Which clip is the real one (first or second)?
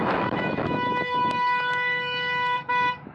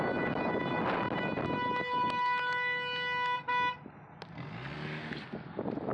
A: second